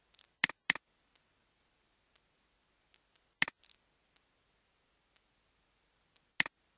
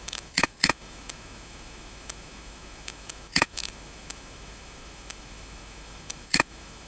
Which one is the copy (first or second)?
second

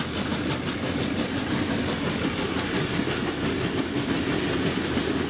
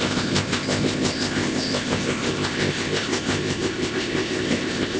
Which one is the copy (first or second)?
second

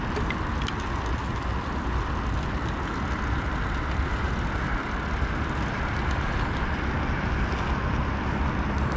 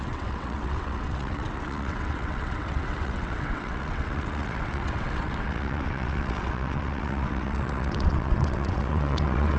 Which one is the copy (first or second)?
second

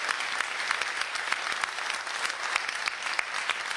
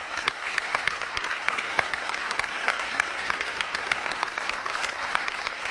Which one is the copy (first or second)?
second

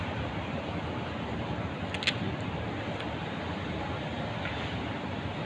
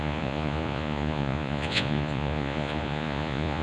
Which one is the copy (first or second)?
second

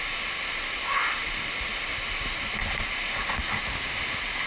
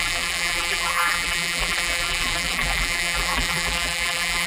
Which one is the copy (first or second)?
second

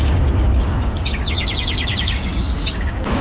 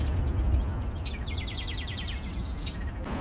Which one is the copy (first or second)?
first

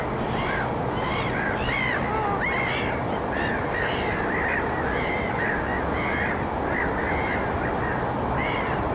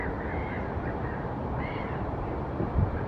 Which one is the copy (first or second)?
second